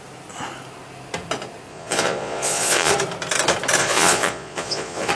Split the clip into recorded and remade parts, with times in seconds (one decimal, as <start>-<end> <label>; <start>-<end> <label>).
0.0-1.7 recorded; 1.7-2.9 remade; 2.9-3.8 recorded; 3.8-5.1 remade